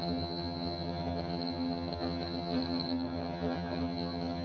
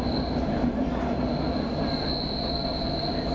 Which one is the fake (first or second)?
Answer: first